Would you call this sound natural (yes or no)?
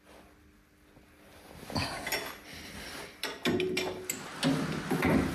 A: yes